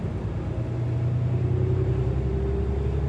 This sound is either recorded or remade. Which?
recorded